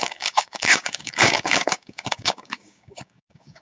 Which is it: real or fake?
fake